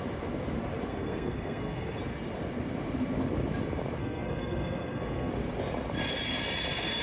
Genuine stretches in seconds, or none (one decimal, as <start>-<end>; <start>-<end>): 0.0-0.9; 2.0-4.0; 5.3-7.0